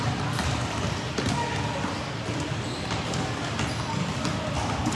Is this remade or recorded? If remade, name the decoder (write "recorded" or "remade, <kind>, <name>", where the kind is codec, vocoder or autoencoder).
recorded